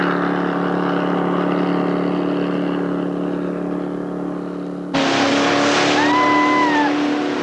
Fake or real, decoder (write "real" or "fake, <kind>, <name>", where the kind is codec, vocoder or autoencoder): real